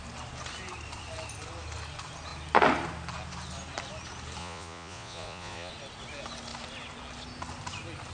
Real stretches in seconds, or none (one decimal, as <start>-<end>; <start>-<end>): 0.0-4.4; 5.7-8.1